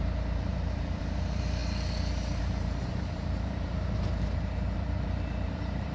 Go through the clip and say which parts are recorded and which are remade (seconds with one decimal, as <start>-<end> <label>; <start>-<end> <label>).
0.0-1.6 remade; 1.6-2.4 recorded; 2.4-5.9 remade